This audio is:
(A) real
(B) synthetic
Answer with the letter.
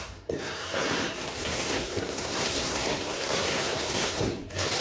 B